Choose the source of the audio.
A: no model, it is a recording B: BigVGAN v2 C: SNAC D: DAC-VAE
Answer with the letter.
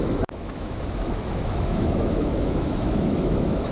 D